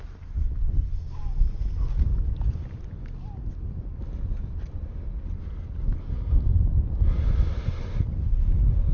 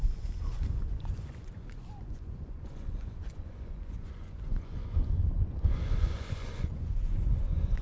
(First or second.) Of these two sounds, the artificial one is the second